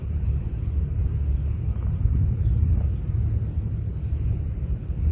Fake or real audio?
fake